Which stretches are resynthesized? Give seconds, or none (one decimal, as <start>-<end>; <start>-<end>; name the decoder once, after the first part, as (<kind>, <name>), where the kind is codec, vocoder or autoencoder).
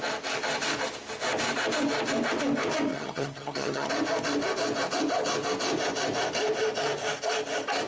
2.9-3.9 (vocoder, HiFi-GAN)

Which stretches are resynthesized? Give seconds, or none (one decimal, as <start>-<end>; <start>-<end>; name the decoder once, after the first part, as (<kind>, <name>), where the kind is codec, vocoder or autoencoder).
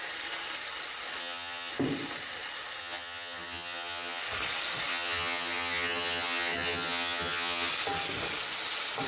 1.2-1.7 (vocoder, HiFi-GAN); 2.8-4.2; 4.9-7.7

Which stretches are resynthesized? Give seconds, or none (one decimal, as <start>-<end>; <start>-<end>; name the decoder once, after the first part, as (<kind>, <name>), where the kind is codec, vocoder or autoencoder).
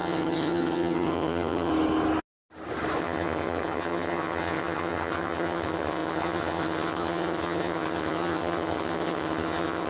0.0-1.7 (vocoder, HiFi-GAN); 3.0-9.9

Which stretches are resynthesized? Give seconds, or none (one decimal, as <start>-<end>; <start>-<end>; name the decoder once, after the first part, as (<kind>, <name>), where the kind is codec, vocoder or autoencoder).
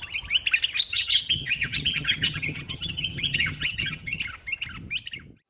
0.9-4.2 (vocoder, HiFi-GAN)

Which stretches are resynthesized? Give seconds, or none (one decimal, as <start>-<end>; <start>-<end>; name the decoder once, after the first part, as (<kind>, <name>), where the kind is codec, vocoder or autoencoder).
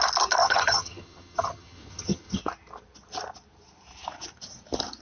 0.4-2.4 (vocoder, HiFi-GAN)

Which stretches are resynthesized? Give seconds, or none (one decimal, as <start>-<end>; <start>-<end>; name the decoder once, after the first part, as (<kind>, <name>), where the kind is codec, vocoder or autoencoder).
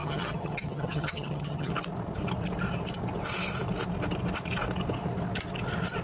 0.0-1.7 (vocoder, HiFi-GAN)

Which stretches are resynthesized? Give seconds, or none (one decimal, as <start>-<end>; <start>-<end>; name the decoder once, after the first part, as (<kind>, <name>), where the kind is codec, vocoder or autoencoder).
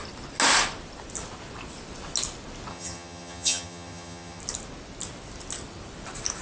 2.7-4.4 (vocoder, HiFi-GAN)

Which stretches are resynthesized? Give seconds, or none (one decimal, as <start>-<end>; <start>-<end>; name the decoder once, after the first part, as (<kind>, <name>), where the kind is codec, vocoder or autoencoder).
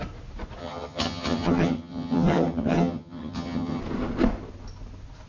0.6-3.8 (vocoder, HiFi-GAN)